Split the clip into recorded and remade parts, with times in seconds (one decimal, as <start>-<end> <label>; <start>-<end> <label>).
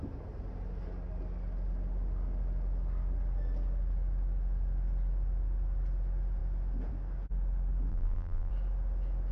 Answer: 0.0-7.9 recorded; 7.9-8.5 remade; 8.5-9.3 recorded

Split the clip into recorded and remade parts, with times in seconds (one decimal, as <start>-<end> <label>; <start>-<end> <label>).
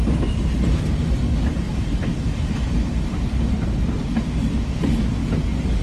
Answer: 0.0-2.1 recorded; 2.1-4.9 remade; 4.9-5.8 recorded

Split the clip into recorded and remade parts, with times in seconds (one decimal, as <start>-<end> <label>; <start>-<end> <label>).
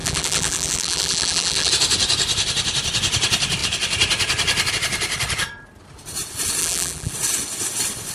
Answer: 0.0-1.7 remade; 1.7-6.6 recorded; 6.6-7.1 remade; 7.1-8.1 recorded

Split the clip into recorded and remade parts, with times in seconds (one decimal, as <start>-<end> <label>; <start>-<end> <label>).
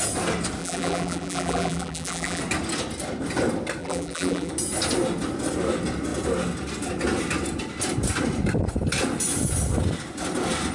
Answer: 0.0-0.6 recorded; 0.6-2.4 remade; 2.4-3.8 recorded; 3.8-4.5 remade; 4.5-10.7 recorded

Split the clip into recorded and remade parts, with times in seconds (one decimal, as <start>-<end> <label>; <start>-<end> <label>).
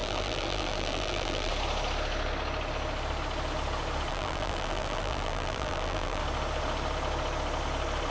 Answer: 0.0-1.5 remade; 1.5-4.1 recorded; 4.1-6.2 remade; 6.2-8.1 recorded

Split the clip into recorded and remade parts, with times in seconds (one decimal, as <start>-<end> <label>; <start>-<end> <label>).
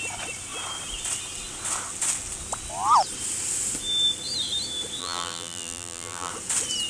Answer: 0.0-5.0 recorded; 5.0-6.3 remade; 6.3-6.9 recorded